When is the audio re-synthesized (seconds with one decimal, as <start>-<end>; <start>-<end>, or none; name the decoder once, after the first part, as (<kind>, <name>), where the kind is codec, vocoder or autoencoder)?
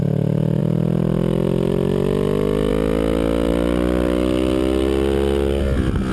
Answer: none